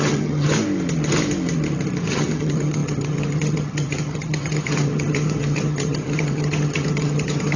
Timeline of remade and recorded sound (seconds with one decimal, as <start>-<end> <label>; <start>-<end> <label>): 0.0-0.5 remade; 0.5-2.1 recorded; 2.1-7.6 remade